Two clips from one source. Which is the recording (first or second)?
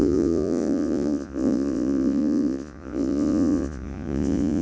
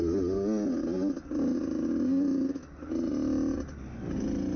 second